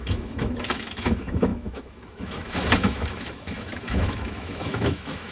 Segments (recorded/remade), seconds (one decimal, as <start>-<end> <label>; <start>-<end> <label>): 0.0-5.3 remade